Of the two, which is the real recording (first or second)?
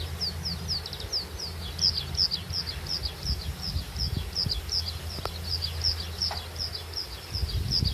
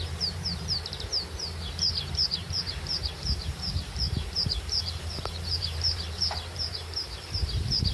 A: first